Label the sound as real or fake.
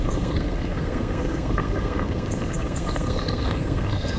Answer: fake